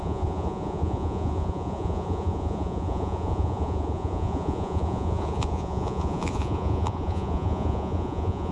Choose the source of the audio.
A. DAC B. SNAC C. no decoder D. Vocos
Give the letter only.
D